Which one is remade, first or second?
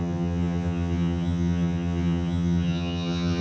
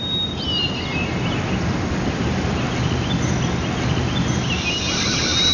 first